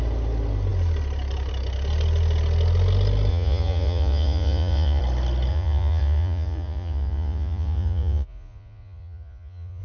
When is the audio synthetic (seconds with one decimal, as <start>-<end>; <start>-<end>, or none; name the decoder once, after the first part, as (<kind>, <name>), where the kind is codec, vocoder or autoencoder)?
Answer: 3.3-5.0 (vocoder, Vocos); 5.5-9.8